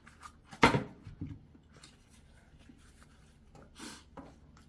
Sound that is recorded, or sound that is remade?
recorded